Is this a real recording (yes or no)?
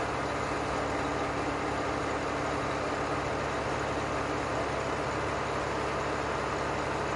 yes